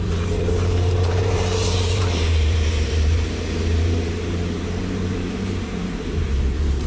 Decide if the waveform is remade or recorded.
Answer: remade